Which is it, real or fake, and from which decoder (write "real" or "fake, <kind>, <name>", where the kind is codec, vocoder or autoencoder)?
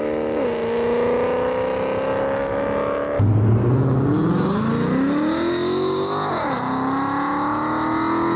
real